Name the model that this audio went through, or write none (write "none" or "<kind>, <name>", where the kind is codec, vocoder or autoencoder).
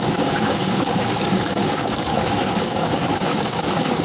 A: codec, DAC